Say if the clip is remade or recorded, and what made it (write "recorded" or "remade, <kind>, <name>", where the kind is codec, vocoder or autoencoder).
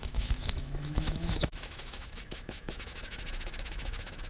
remade, autoencoder, DAC-VAE